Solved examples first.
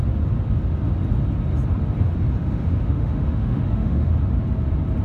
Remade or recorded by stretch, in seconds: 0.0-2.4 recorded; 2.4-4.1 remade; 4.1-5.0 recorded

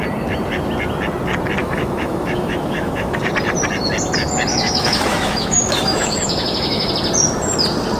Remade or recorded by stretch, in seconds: 0.0-1.6 recorded; 1.6-3.2 remade; 3.2-4.5 recorded; 4.5-6.9 remade; 6.9-8.0 recorded

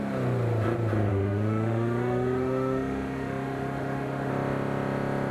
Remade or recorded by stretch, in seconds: 0.0-1.1 recorded; 1.1-4.3 remade; 4.3-5.3 recorded

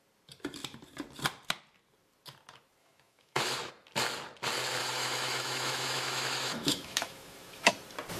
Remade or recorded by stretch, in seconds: 0.0-2.8 recorded; 2.8-3.7 remade; 3.7-4.8 recorded; 4.8-7.7 remade; 7.7-8.2 recorded

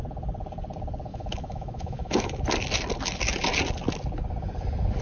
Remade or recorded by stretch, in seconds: 0.0-1.1 recorded; 1.1-2.3 remade; 2.3-5.0 recorded

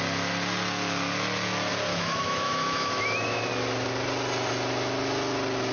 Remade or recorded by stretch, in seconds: 0.0-1.9 recorded; 1.9-3.5 remade; 3.5-5.7 recorded

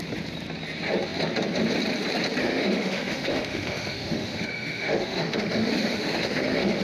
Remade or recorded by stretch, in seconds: 0.0-2.4 recorded; 2.4-6.8 remade

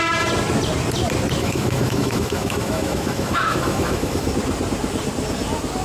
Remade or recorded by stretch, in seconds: 0.0-1.4 recorded; 1.4-4.3 remade; 4.3-5.8 recorded